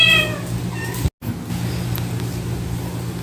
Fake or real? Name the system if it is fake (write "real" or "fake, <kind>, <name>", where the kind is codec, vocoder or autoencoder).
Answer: real